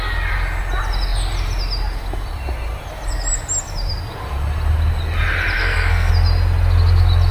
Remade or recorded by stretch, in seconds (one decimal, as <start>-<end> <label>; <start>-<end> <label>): 0.0-5.6 recorded; 5.6-6.1 remade; 6.1-7.3 recorded